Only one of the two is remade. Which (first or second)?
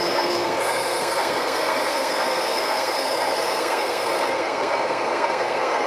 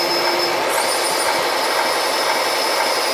first